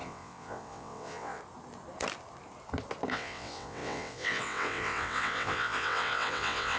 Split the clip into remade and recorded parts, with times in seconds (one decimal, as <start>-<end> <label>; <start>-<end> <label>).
0.0-1.4 remade; 1.4-3.1 recorded; 3.1-6.8 remade